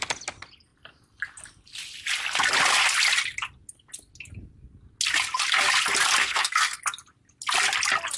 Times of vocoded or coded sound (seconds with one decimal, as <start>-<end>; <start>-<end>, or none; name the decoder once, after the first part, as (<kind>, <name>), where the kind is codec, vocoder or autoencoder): 6.2-6.8 (codec, SNAC)